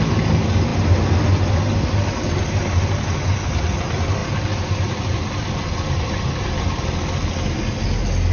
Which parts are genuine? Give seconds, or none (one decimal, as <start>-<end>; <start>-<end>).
0.0-8.3

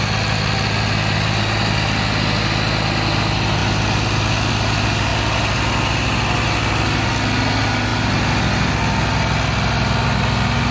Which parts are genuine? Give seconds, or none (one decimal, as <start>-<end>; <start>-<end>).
0.0-10.7